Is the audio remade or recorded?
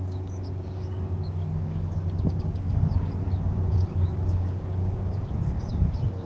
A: remade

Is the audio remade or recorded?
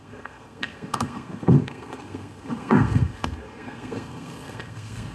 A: remade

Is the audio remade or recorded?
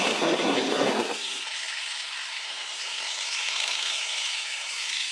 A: remade